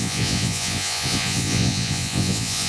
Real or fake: fake